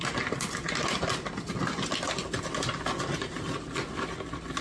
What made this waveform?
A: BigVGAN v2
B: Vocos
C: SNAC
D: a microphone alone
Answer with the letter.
D